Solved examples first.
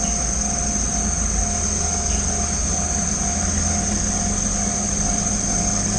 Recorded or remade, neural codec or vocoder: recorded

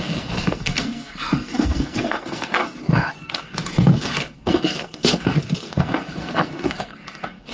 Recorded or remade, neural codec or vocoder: remade, codec, SNAC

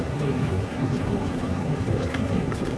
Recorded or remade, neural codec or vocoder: remade, codec, SNAC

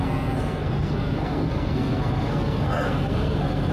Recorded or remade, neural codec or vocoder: remade, codec, SNAC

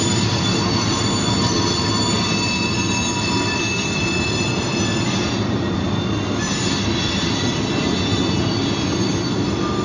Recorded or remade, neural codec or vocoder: recorded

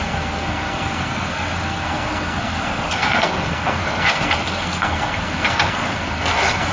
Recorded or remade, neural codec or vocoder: remade, codec, SNAC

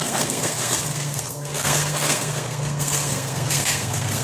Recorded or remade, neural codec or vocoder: remade, codec, SNAC